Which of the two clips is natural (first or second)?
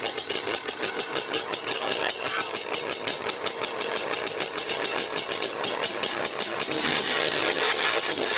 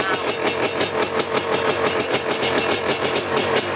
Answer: second